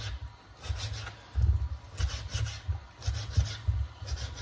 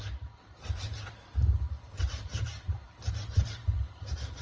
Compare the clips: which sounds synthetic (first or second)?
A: second